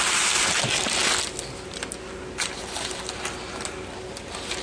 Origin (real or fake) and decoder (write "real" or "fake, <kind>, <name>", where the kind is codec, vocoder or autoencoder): real